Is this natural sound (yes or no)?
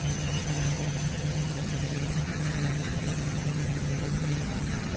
no